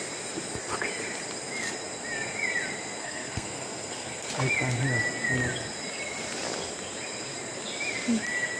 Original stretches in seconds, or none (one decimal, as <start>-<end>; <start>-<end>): 0.0-3.0; 4.3-8.6